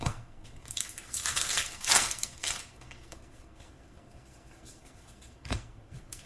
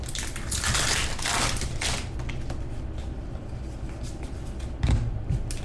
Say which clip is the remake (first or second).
first